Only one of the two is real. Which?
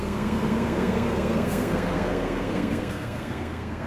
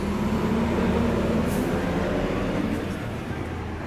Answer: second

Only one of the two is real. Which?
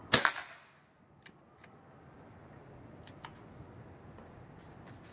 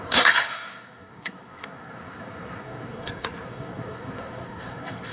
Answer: first